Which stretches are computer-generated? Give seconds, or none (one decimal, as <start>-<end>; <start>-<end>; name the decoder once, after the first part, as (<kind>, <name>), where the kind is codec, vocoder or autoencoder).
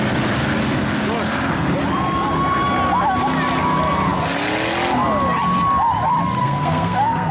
6.4-7.3 (codec, SNAC)